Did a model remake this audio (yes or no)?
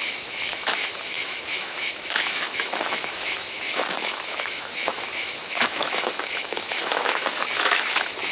yes